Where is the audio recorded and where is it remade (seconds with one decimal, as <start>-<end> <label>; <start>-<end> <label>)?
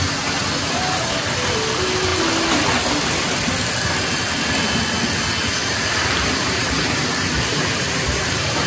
0.0-5.6 recorded; 5.6-8.7 remade